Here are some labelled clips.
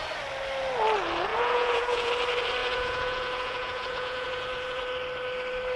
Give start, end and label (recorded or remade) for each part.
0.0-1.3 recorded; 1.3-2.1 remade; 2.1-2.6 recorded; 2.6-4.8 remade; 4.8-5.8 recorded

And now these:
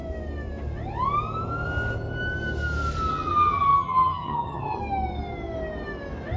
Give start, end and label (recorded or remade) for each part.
0.0-3.1 recorded; 3.1-4.8 remade; 4.8-6.4 recorded

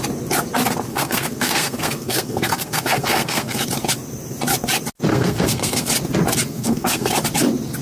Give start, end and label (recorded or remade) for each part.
0.0-0.9 recorded; 0.9-3.6 remade; 3.6-5.1 recorded; 5.1-5.9 remade; 5.9-6.5 recorded; 6.5-7.1 remade; 7.1-7.8 recorded

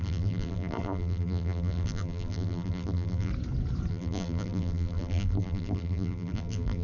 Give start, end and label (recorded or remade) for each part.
0.0-3.3 remade; 3.3-3.9 recorded; 3.9-6.8 remade

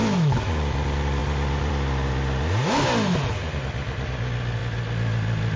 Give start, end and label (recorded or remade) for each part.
0.0-0.5 remade; 0.5-5.6 recorded